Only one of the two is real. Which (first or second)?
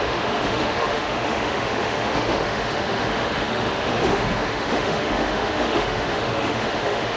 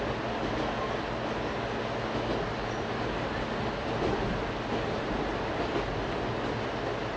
second